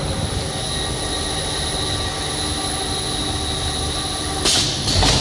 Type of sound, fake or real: real